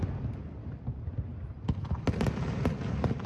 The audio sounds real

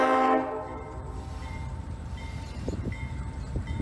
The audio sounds fake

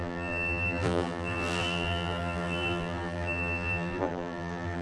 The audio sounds fake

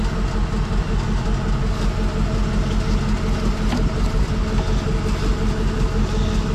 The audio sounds real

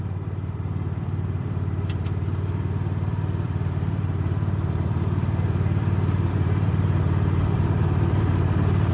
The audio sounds fake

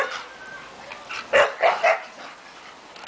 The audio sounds real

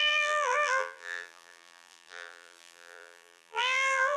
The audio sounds fake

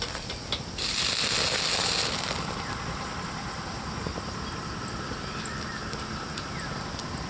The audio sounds real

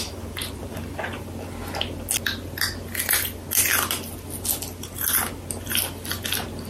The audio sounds real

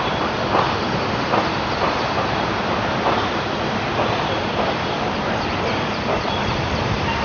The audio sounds fake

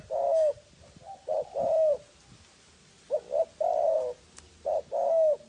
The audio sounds real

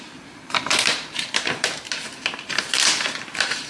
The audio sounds fake